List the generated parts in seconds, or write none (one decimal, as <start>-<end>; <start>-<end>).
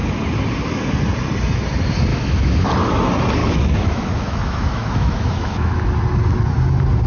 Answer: 2.1-2.7; 3.4-5.7